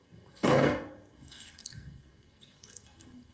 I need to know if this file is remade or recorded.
remade